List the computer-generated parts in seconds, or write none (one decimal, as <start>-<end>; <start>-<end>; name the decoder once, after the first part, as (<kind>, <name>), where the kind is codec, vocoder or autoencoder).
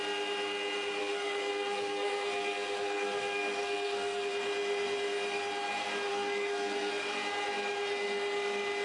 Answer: 1.0-4.3 (codec, SNAC); 6.1-6.9